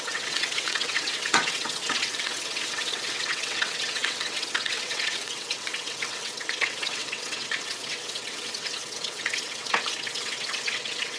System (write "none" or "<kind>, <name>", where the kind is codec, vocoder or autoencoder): vocoder, WaveNeXt